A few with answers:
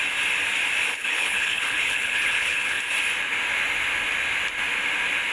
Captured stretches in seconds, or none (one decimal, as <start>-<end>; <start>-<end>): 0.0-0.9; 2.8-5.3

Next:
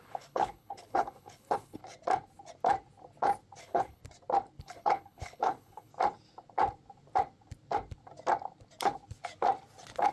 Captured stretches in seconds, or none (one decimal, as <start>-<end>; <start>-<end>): 1.8-3.6; 4.0-4.6; 5.9-10.1

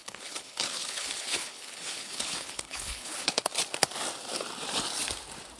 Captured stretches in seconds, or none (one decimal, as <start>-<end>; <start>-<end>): 3.4-5.6

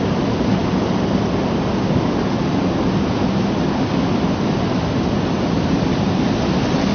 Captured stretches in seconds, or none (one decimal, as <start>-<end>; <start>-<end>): 0.0-6.9

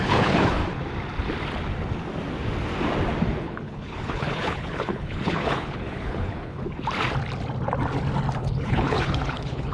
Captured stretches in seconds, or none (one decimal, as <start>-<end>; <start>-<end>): 0.6-3.4; 6.6-8.4